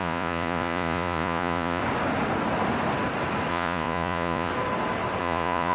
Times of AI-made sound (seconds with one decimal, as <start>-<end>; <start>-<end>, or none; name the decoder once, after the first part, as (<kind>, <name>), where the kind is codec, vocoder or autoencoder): 0.0-1.8 (vocoder, Vocos); 3.5-4.5; 5.2-5.7